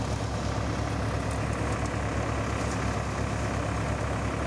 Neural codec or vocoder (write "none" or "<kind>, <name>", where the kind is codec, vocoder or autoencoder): none